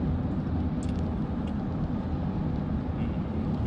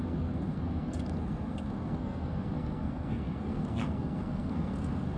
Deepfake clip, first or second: second